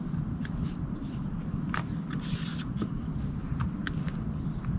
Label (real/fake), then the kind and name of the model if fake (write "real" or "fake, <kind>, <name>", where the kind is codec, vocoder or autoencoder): real